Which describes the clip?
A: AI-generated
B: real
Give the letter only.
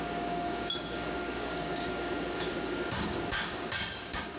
A